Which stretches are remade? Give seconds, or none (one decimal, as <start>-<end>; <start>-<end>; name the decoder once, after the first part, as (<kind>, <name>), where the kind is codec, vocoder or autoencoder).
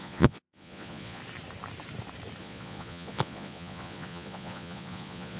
0.0-1.2 (vocoder, Vocos); 2.4-5.4